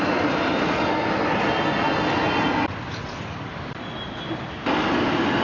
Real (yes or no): yes